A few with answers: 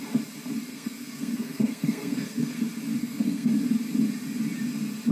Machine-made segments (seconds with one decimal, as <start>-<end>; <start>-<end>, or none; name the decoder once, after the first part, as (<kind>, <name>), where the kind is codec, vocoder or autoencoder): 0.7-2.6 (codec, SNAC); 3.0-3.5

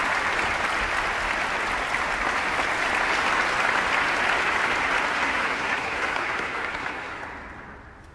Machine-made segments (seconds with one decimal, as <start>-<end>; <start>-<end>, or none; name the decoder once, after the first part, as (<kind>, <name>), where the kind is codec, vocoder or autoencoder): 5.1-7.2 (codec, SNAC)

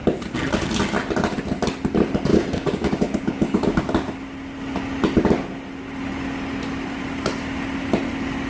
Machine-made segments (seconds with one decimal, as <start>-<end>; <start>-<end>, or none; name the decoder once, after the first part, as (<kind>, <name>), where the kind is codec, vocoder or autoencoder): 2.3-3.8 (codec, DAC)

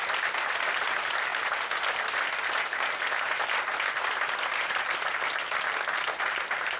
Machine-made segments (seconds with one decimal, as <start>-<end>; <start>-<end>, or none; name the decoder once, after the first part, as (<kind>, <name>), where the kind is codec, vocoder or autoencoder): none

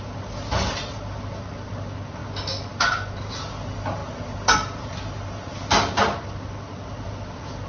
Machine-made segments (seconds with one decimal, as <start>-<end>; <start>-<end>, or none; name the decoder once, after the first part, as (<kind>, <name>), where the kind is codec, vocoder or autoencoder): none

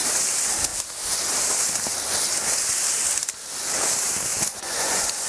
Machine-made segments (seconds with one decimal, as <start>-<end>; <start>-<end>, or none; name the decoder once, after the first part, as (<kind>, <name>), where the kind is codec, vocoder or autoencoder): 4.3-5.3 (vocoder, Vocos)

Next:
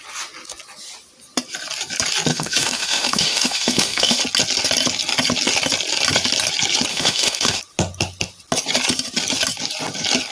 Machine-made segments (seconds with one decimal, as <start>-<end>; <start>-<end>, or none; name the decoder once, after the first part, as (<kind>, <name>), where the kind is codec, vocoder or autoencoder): 2.3-4.2 (autoencoder, DAC-VAE); 6.9-7.6

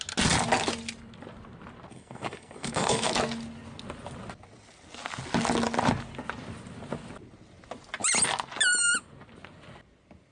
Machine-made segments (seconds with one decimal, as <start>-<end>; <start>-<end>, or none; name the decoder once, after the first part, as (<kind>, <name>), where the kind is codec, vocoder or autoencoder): 1.9-3.1 (codec, SNAC)